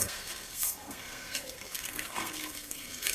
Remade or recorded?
remade